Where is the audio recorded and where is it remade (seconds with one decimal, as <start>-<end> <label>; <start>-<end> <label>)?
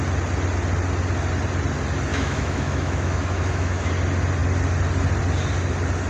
0.0-2.1 recorded; 2.1-3.9 remade; 3.9-6.1 recorded